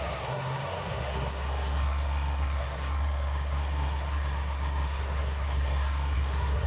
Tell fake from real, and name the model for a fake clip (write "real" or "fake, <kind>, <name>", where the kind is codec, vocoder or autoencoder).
fake, codec, SNAC